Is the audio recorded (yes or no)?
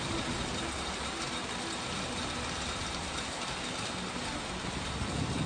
yes